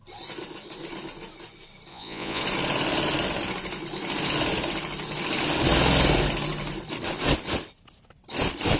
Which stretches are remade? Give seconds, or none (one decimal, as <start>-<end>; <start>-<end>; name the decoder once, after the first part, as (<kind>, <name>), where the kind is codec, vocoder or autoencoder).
1.9-2.4 (vocoder, Vocos)